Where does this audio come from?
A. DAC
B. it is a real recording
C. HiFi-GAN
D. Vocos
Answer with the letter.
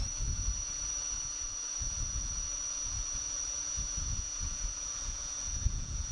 D